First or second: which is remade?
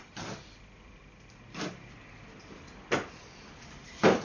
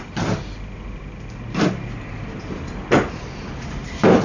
first